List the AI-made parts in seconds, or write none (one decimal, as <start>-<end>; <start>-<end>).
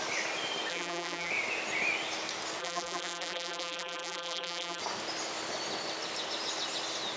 0.7-1.3; 2.6-4.8